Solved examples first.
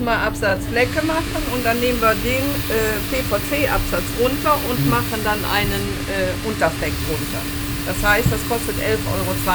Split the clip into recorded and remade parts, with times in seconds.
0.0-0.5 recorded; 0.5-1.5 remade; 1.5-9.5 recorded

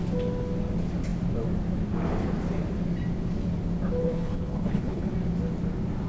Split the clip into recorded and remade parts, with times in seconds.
0.0-4.0 recorded; 4.0-5.1 remade; 5.1-6.1 recorded

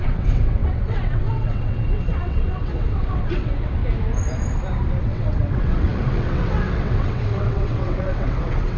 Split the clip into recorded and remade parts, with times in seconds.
0.0-3.8 remade; 3.8-5.0 recorded; 5.0-8.8 remade

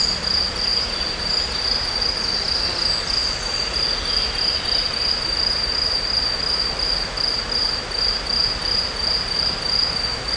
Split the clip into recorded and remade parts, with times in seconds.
0.0-10.4 recorded

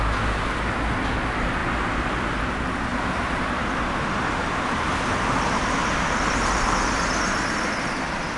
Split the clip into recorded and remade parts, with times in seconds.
0.0-1.6 recorded; 1.6-2.4 remade; 2.4-2.9 recorded; 2.9-7.9 remade; 7.9-8.4 recorded

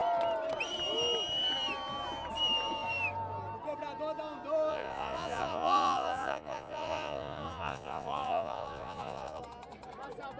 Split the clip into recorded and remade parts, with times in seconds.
0.0-4.7 recorded; 4.7-9.4 remade; 9.4-10.4 recorded

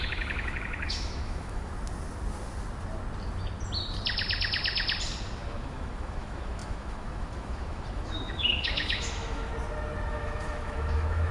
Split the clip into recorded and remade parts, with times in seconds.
0.0-1.7 remade; 1.7-5.5 recorded; 5.5-9.5 remade; 9.5-10.1 recorded; 10.1-11.3 remade